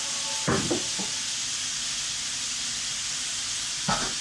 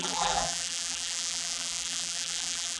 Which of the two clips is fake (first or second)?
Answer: second